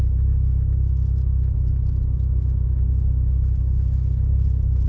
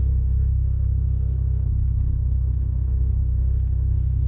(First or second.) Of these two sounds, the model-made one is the second